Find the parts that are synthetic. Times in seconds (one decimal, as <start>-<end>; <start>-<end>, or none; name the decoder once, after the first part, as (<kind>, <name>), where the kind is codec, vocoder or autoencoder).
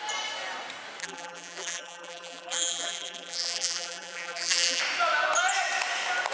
1.0-4.8 (vocoder, BigVGAN v2)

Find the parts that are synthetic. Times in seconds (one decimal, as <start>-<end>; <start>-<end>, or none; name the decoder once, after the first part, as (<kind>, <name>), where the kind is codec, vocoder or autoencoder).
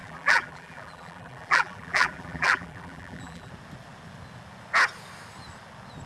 0.0-3.5 (vocoder, BigVGAN v2)